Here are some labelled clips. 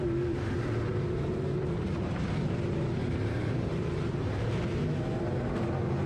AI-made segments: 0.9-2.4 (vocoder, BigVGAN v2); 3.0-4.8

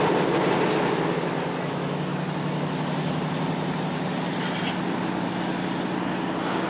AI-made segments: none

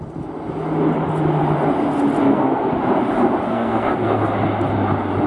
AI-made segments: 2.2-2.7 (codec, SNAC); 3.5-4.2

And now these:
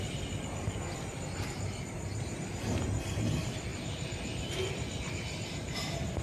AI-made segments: 0.0-2.1 (vocoder, BigVGAN v2); 3.3-6.2

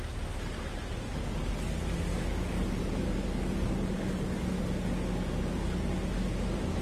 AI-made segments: 2.1-4.6 (codec, DAC)

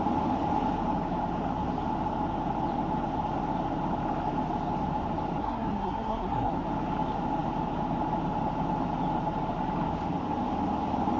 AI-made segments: 5.4-6.5 (codec, SNAC)